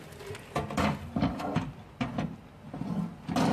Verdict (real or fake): real